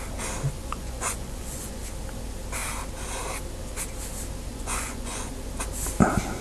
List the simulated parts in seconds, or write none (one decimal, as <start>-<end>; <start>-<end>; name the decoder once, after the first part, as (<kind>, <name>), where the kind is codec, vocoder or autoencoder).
0.6-1.8 (vocoder, Vocos); 4.5-5.3